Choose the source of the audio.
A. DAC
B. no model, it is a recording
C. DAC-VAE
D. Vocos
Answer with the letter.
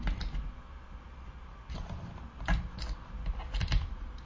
B